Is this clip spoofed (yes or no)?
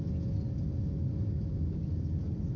no